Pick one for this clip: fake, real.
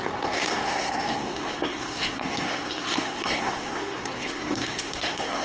fake